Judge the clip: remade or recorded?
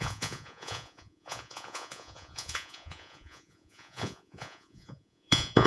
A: remade